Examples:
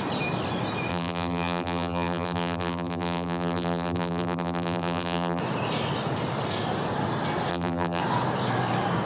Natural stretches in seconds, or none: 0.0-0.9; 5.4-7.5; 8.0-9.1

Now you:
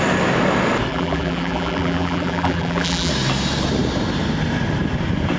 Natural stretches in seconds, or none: 0.0-0.9; 3.1-5.4